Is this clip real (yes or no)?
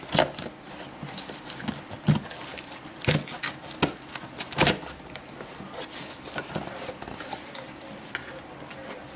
yes